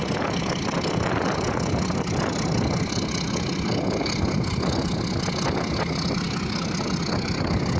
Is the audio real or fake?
real